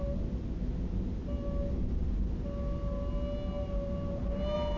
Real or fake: real